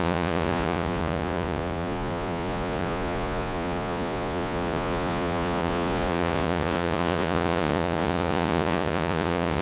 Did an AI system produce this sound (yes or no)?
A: yes